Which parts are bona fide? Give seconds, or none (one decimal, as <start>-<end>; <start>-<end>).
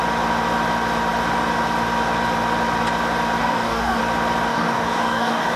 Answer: 0.0-3.4; 4.0-4.5